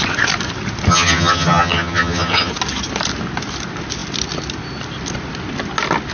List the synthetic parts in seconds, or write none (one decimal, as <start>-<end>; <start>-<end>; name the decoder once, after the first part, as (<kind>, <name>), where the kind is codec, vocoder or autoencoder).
0.9-2.5 (vocoder, HiFi-GAN)